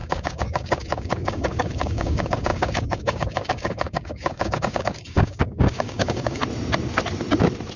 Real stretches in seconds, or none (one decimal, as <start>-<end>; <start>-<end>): 6.4-7.8